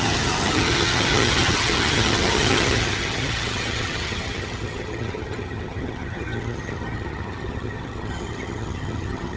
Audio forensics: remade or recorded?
remade